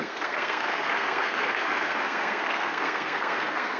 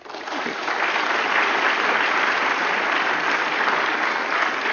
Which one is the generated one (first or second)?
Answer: first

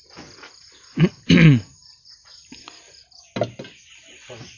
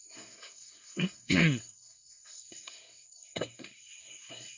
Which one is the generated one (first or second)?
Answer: second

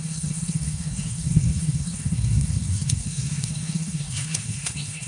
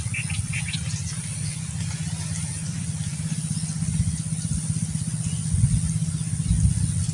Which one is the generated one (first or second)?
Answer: first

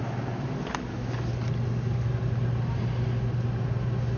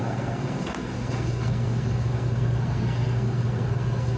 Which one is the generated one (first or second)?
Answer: second